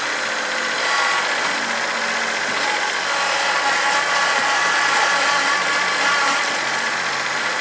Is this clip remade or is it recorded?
recorded